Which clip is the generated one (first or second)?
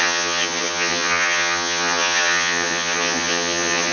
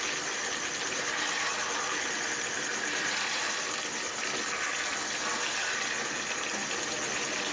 first